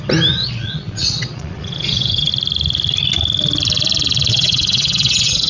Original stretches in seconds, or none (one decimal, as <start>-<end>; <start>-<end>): 0.0-0.4; 2.3-4.3